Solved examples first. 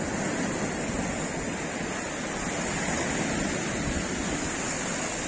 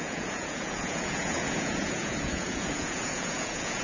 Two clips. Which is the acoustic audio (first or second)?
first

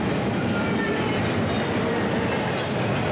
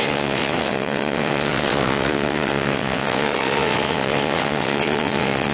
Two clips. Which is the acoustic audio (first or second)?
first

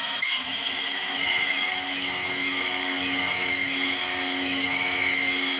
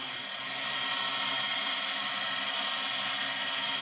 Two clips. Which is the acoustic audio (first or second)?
second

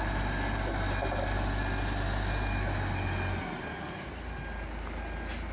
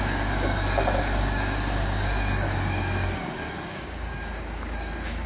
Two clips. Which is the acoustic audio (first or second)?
first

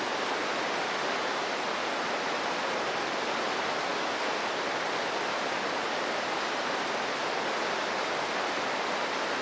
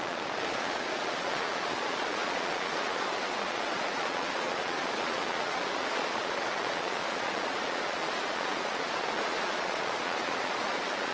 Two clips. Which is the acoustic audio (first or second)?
first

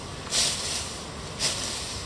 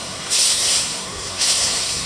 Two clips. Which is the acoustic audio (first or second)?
first